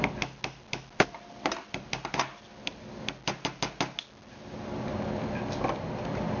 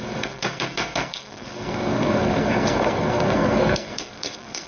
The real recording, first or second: first